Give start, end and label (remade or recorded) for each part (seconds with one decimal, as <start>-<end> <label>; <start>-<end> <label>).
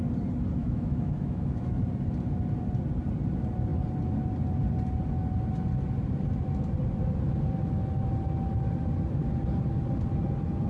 0.0-0.6 recorded; 0.6-1.8 remade; 1.8-10.7 recorded